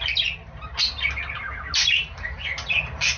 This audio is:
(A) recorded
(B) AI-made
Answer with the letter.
A